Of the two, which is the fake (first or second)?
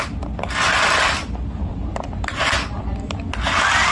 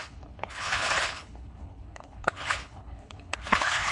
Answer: second